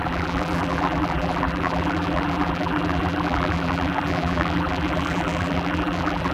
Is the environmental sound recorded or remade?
remade